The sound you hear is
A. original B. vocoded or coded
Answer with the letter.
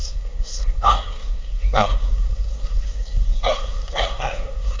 B